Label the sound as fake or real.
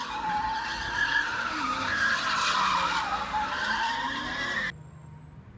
real